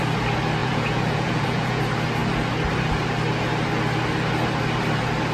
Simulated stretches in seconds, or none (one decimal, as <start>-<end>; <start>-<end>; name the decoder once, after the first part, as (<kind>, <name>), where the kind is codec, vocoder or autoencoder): 0.6-1.8 (vocoder, Vocos)